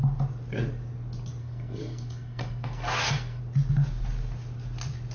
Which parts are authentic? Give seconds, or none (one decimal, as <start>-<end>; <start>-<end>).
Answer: 0.0-1.4; 3.4-5.1